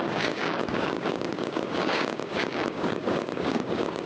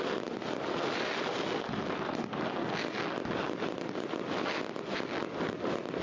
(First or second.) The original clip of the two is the second